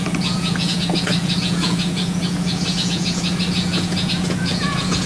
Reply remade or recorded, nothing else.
remade